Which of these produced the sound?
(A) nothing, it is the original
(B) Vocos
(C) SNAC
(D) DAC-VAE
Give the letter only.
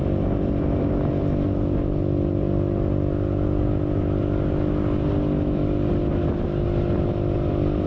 A